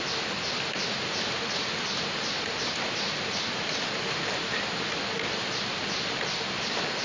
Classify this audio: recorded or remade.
recorded